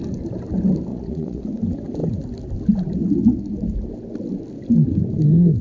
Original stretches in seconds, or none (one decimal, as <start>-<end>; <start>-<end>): 0.0-0.9; 1.4-5.6